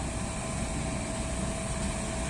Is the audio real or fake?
real